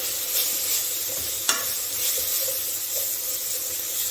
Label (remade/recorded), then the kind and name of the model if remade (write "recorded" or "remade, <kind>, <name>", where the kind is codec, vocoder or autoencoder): recorded